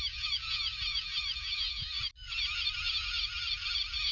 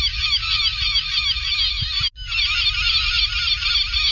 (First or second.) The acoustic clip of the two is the second